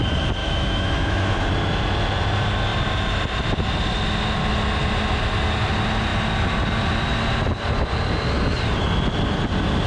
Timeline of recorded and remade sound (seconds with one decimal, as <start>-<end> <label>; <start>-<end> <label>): 0.0-0.4 recorded; 0.4-1.5 remade; 1.5-9.9 recorded